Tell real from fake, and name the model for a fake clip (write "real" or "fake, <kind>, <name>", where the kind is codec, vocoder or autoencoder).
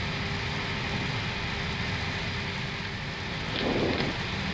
real